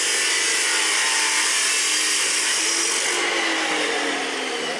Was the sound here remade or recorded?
recorded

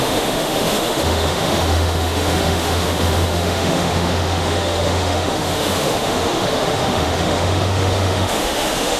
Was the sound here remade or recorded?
remade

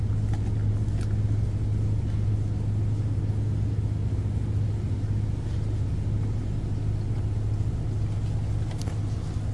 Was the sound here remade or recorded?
recorded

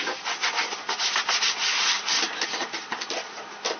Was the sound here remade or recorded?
recorded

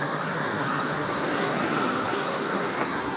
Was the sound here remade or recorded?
remade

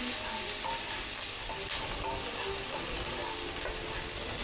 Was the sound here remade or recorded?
recorded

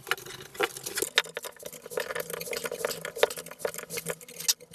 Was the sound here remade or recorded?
recorded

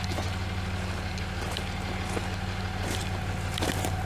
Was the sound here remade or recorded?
recorded